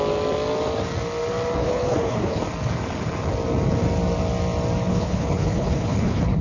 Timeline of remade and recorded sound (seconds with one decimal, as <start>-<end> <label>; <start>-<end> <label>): 0.0-1.6 recorded; 1.6-2.4 remade; 2.4-4.9 recorded; 4.9-6.4 remade